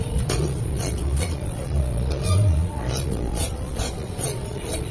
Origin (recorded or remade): remade